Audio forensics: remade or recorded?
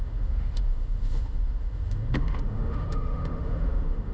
remade